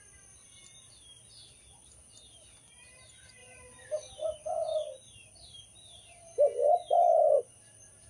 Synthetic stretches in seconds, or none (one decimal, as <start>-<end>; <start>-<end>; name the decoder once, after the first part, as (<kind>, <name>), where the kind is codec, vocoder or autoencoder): 0.0-3.4 (vocoder, BigVGAN v2); 4.5-8.1